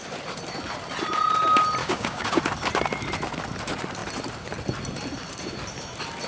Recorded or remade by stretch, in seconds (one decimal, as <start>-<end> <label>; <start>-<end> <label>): 0.0-1.8 recorded; 1.8-2.4 remade; 2.4-6.3 recorded